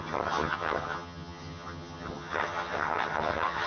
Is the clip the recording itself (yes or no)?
no